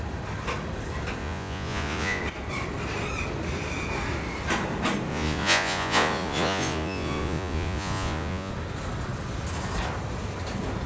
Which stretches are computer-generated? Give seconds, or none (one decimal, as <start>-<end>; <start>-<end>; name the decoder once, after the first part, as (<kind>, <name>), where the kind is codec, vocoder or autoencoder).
1.2-2.2 (vocoder, Vocos); 5.1-8.5